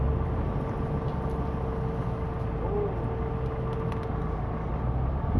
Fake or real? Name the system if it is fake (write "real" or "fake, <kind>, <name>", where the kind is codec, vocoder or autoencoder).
real